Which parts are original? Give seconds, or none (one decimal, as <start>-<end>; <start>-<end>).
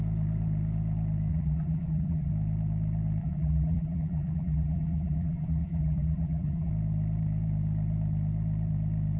0.0-1.3; 2.3-3.2; 6.7-9.2